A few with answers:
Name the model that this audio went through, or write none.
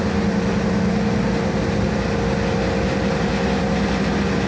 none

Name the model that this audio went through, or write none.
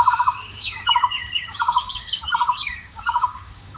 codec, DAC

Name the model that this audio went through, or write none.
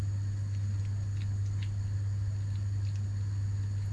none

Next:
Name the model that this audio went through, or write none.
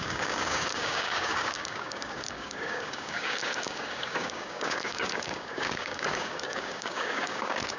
codec, DAC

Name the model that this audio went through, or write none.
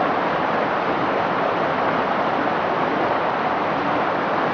none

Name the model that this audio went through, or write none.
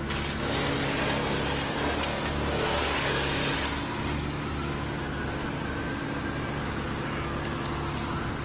none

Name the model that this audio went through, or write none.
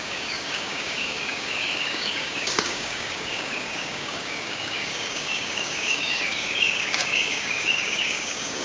codec, DAC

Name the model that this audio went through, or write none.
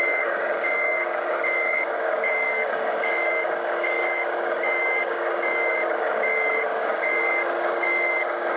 codec, DAC